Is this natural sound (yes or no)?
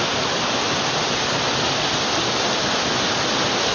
yes